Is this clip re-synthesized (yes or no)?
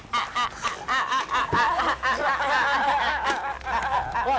no